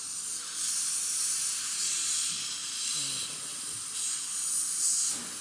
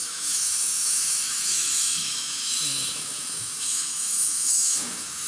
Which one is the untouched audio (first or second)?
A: first